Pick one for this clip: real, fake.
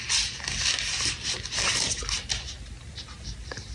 real